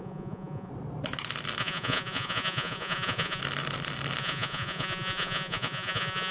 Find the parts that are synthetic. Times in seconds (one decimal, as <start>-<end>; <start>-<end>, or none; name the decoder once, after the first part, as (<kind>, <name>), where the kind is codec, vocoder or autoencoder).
0.0-0.7 (vocoder, Vocos); 1.6-3.4; 4.2-6.3